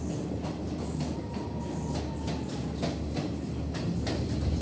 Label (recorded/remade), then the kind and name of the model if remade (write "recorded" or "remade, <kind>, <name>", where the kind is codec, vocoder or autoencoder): recorded